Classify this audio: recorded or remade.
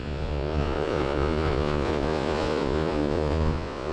remade